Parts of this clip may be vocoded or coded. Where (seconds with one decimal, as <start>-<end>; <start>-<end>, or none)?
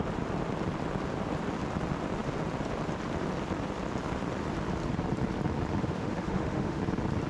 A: 5.8-6.8